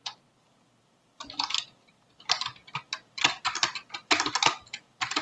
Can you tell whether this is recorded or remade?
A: recorded